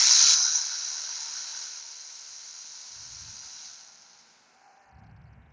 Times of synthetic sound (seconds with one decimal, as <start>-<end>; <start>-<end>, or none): none